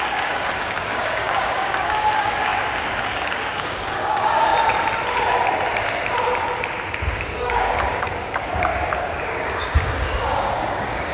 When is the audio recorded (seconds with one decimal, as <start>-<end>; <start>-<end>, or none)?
4.5-7.1; 8.7-9.2